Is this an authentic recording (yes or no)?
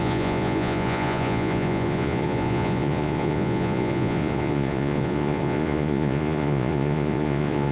no